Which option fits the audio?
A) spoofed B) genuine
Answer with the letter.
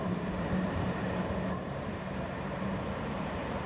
A